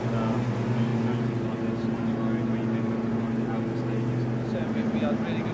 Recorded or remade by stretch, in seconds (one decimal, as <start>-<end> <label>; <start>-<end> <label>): 0.0-5.5 recorded